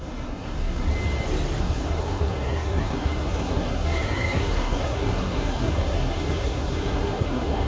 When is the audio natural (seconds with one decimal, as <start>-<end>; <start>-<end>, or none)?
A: 0.9-1.6